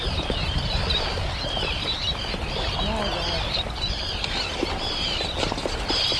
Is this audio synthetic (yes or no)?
no